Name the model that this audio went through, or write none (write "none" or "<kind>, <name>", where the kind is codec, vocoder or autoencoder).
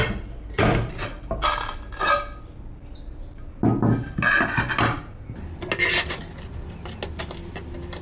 none